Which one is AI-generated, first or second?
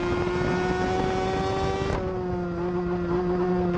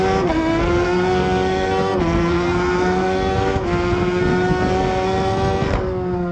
second